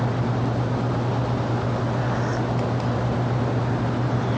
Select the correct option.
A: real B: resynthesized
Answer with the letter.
A